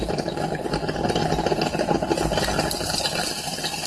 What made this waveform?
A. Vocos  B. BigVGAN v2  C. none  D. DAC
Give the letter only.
C